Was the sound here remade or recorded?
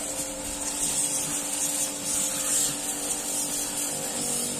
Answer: recorded